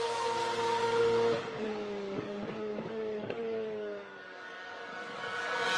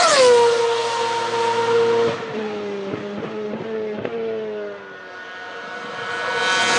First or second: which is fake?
first